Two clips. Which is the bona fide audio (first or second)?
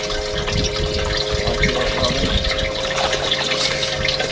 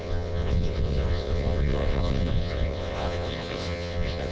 first